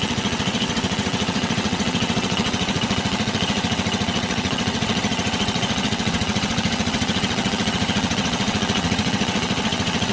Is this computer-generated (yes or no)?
yes